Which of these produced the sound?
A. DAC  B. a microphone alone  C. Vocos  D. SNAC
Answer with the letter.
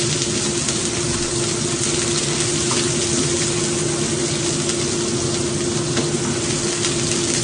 B